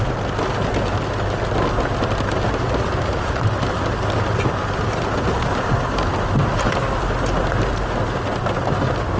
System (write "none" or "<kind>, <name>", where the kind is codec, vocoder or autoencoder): none